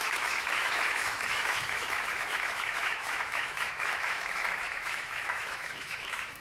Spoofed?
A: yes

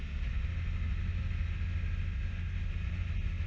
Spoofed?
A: no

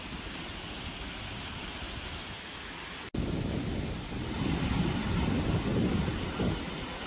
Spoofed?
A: no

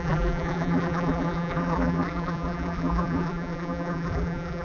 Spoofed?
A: yes